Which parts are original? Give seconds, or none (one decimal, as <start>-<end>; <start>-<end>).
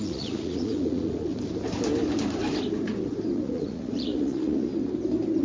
1.3-3.4; 4.7-5.4